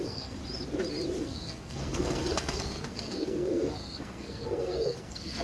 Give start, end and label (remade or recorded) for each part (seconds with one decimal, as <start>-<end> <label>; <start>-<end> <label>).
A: 0.0-0.4 remade; 0.4-1.2 recorded; 1.2-5.4 remade